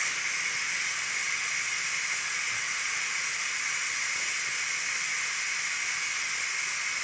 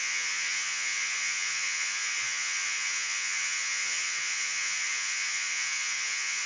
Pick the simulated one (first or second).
second